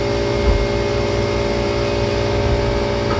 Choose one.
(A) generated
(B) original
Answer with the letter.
B